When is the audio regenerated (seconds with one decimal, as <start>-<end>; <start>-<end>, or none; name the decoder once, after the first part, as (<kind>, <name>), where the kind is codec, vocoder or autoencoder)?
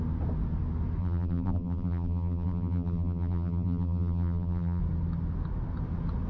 1.0-4.8 (vocoder, BigVGAN v2)